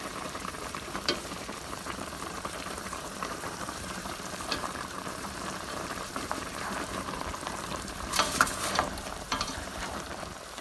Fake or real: fake